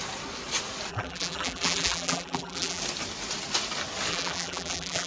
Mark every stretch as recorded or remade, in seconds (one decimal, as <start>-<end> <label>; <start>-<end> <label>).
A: 0.0-0.9 recorded; 0.9-2.8 remade; 2.8-4.1 recorded; 4.1-5.1 remade